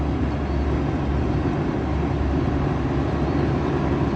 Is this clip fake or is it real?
real